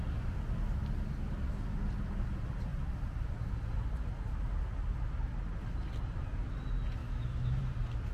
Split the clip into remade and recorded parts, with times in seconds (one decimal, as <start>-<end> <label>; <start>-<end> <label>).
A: 0.0-7.0 recorded; 7.0-7.6 remade; 7.6-8.1 recorded